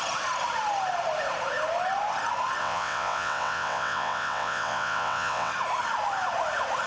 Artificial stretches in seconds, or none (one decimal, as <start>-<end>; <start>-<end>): 2.6-5.5